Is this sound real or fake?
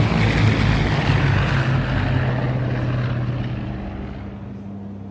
real